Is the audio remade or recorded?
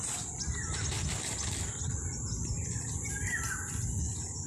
recorded